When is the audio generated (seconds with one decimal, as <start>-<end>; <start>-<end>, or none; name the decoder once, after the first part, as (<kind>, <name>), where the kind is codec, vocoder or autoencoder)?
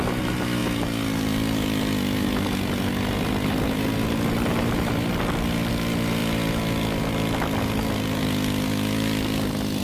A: none